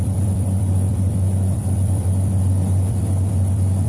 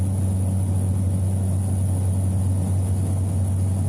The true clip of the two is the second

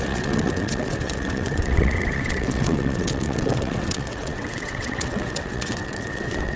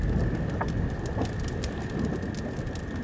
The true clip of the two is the second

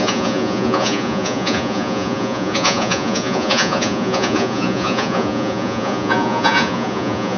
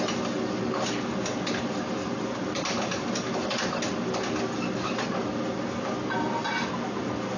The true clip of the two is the second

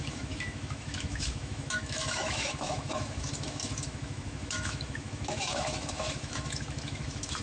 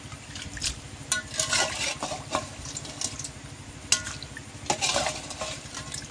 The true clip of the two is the second